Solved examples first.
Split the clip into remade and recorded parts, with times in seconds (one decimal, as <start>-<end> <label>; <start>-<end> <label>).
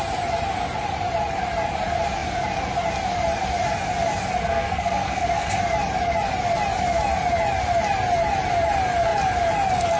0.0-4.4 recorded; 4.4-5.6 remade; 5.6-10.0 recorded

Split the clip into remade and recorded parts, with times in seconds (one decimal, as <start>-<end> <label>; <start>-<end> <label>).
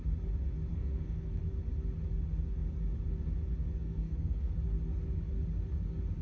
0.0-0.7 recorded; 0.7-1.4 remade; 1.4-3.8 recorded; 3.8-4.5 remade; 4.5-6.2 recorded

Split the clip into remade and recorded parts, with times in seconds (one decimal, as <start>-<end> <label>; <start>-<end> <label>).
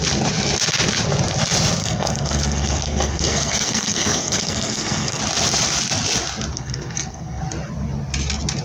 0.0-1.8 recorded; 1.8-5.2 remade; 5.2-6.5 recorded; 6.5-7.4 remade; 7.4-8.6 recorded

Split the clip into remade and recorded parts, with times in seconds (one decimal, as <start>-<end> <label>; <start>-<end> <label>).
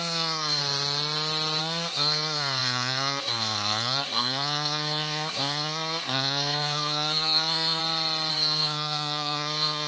0.0-0.6 remade; 0.6-1.6 recorded; 1.6-7.8 remade; 7.8-8.3 recorded; 8.3-9.9 remade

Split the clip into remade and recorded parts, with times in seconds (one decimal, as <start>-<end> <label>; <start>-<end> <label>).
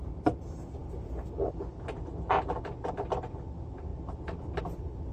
0.0-5.1 recorded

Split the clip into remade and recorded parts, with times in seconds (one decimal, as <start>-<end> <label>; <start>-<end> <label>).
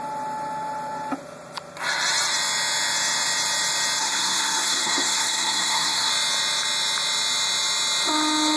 0.0-4.0 recorded; 4.0-6.1 remade; 6.1-8.6 recorded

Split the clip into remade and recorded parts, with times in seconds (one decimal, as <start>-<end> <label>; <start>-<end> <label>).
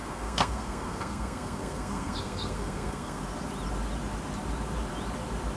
0.0-3.2 remade; 3.2-5.6 recorded